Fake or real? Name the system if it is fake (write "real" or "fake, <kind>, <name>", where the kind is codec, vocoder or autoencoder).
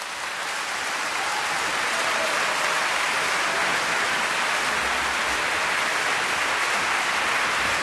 real